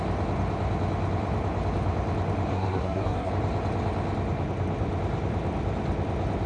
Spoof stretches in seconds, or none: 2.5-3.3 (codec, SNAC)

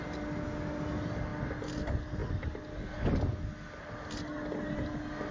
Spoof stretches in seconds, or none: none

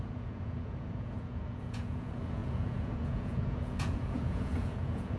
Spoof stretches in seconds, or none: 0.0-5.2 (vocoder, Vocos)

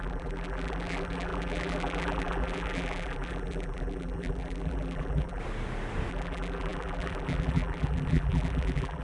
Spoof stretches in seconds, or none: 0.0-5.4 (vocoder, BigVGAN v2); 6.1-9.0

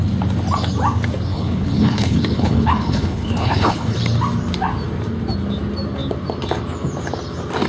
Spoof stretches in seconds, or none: 1.3-4.0 (codec, HILCodec)

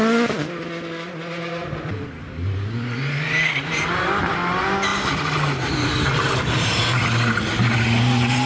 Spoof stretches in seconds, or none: none